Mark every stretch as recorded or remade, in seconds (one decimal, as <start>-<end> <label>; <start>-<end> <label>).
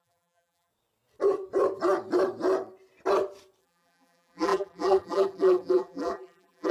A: 0.0-0.7 remade; 0.7-3.6 recorded; 3.6-6.7 remade